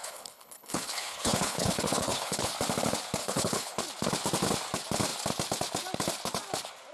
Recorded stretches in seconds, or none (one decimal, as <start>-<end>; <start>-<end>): 2.5-3.2; 3.8-6.9